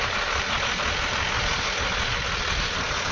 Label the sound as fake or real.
real